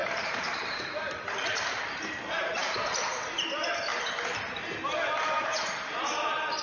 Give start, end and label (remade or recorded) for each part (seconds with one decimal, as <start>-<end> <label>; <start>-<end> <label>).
0.0-3.9 remade; 3.9-5.4 recorded; 5.4-6.6 remade